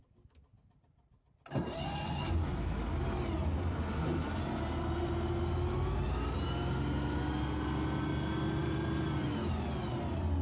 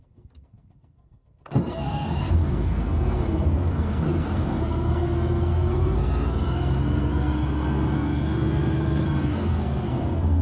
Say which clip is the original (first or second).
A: first